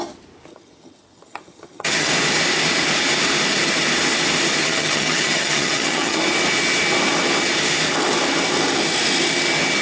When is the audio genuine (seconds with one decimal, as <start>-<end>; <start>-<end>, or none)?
0.0-0.5; 2.1-4.6; 6.2-9.8